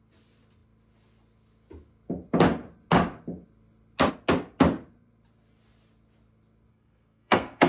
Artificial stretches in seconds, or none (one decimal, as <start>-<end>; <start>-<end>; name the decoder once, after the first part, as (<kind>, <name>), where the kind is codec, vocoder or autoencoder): 6.7-7.7 (codec, SNAC)